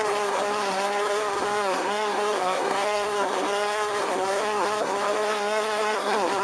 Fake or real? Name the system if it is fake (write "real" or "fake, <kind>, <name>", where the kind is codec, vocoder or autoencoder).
fake, codec, SNAC